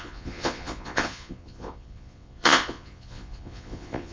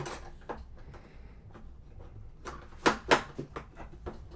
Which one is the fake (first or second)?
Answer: first